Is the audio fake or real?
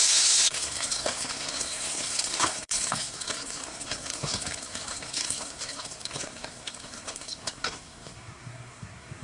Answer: fake